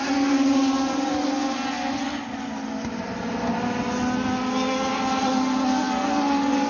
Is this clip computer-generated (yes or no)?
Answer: no